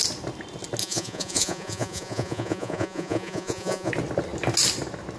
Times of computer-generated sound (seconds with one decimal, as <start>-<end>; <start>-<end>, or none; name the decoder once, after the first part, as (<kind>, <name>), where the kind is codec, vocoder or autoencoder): 0.8-3.9 (vocoder, Vocos)